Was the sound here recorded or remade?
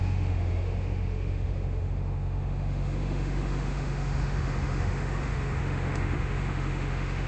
remade